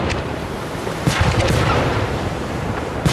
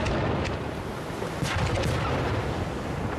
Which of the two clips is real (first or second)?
second